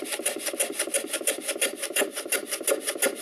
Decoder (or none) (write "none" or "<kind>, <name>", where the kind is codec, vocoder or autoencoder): none